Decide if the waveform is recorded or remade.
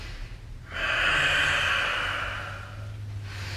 recorded